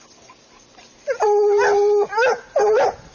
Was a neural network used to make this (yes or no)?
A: no